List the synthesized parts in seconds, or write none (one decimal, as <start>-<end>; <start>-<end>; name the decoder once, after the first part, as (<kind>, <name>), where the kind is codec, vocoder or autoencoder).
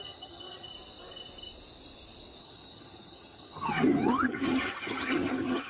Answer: 0.0-0.7 (vocoder, HiFi-GAN); 2.4-5.7